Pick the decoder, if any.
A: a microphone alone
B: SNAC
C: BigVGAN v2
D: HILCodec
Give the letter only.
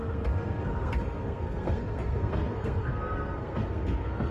B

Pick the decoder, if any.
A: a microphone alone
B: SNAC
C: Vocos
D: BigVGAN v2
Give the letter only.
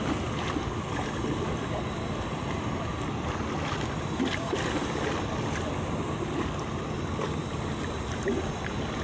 A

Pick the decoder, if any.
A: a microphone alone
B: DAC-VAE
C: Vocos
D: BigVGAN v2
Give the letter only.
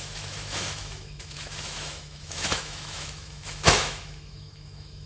B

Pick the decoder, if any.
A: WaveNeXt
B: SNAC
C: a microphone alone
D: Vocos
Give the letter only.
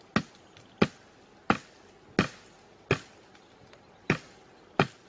C